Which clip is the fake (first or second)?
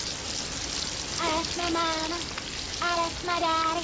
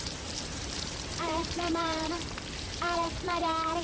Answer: second